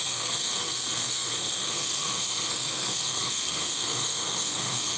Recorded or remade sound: remade